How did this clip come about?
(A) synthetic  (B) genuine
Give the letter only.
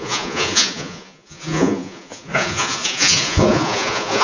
A